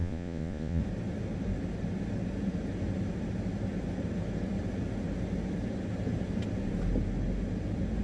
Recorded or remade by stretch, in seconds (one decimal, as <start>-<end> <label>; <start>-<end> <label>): 0.0-0.8 remade; 0.8-8.0 recorded